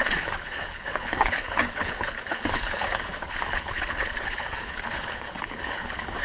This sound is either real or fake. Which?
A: fake